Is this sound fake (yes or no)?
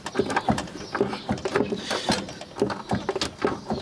no